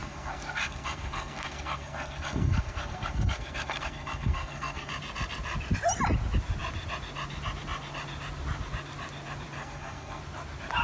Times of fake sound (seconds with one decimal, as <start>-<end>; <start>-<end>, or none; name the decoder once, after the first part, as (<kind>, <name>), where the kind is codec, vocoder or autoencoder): 0.0-4.9 (codec, SNAC); 9.6-10.2